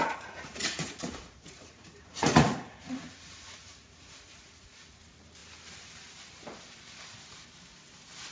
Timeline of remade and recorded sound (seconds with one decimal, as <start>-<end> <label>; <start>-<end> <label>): 0.0-5.0 remade; 5.0-8.3 recorded